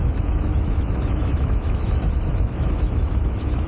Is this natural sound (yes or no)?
no